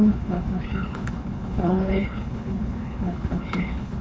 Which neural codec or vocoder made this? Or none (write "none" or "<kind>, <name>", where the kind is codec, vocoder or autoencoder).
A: codec, HILCodec